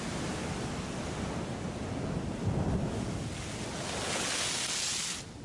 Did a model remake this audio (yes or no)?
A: no